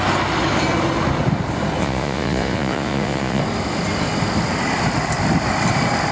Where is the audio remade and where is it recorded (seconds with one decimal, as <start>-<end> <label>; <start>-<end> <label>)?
0.0-1.8 recorded; 1.8-3.4 remade; 3.4-6.1 recorded